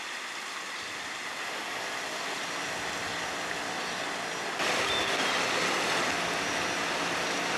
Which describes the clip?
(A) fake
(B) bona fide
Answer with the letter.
B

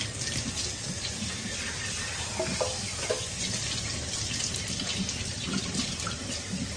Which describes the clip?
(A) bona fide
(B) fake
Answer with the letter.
A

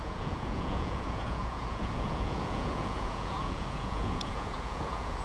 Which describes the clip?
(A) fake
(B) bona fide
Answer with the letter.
A